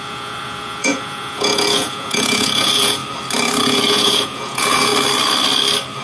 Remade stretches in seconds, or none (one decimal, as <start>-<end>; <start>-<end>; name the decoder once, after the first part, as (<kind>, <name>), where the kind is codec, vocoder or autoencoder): 0.0-3.0 (vocoder, Vocos); 3.6-4.9